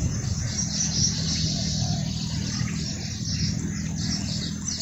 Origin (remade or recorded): recorded